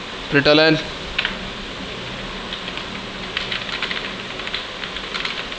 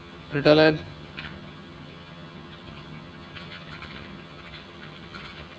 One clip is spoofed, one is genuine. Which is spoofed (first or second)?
second